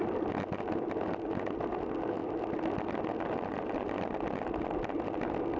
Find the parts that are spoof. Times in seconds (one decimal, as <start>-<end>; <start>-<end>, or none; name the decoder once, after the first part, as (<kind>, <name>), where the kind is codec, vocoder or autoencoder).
none